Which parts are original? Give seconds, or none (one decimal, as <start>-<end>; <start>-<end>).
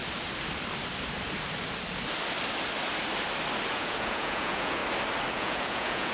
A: 0.0-3.7; 4.8-5.3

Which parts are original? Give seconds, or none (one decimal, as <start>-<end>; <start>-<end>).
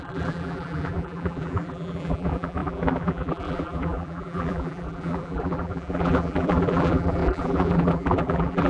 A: none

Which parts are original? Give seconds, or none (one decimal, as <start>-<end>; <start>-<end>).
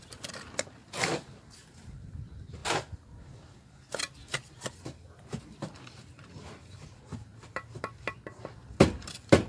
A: 0.8-1.4; 2.6-4.7